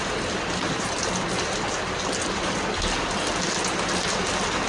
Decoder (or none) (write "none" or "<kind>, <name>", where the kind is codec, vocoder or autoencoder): none